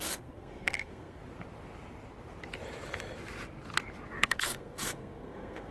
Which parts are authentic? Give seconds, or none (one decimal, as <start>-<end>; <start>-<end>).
1.2-4.2